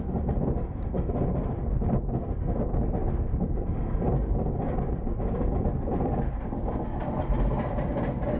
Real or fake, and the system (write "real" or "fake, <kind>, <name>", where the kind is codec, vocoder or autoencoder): real